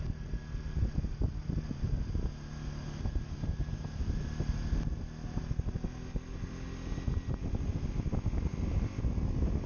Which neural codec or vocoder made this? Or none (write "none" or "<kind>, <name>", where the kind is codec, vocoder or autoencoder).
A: none